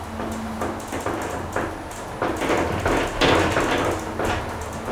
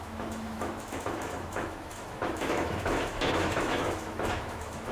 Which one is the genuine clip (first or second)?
first